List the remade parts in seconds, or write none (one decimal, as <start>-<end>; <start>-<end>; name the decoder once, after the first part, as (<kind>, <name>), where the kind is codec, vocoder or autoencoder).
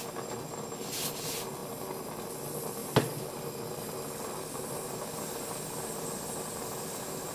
none